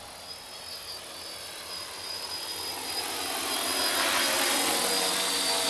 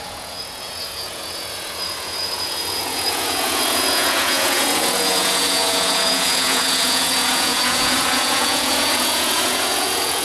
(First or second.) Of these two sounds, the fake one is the second